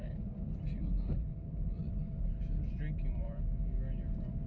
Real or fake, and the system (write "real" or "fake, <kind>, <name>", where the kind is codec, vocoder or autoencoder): fake, vocoder, BigVGAN v2